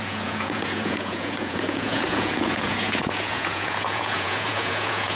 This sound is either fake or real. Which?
fake